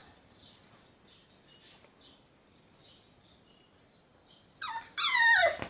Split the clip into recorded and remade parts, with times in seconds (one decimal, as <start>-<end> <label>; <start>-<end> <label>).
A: 0.0-5.7 recorded